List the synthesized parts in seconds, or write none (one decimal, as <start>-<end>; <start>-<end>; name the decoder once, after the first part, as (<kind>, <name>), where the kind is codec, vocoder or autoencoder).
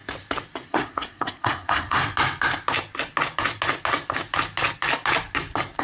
0.7-2.0 (codec, SNAC)